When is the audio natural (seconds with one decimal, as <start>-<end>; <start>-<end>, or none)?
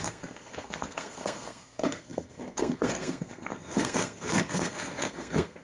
none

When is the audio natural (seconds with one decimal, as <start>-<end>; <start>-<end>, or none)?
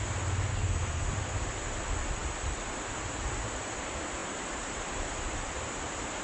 0.0-0.5; 1.1-6.2